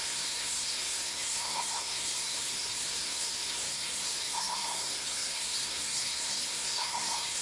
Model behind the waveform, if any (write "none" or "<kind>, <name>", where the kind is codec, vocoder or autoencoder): codec, SNAC